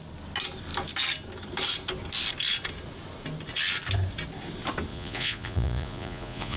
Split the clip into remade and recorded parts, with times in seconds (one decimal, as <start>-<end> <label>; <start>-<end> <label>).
0.0-4.9 recorded; 4.9-6.6 remade